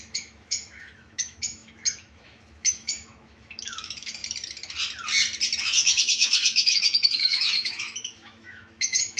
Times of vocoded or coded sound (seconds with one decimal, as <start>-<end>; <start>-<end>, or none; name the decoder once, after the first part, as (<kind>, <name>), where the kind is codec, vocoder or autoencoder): 0.0-4.2 (autoencoder, DAC-VAE); 5.6-9.2